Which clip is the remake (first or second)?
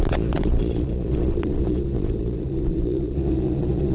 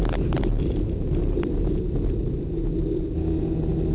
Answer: first